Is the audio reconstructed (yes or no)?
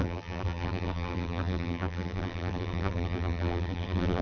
yes